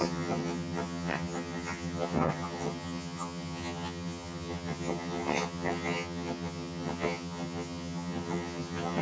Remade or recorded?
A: remade